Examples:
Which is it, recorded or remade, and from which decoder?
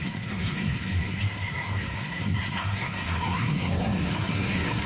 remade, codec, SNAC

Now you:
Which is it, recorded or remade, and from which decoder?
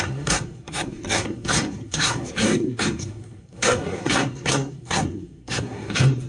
remade, codec, SNAC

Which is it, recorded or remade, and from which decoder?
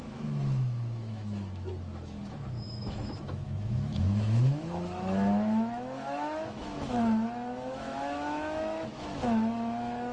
remade, autoencoder, DAC-VAE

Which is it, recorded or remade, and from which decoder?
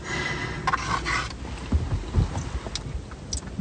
recorded